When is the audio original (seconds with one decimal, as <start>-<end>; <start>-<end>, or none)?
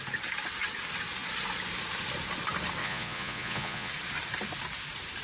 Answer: 0.0-2.8; 3.9-5.2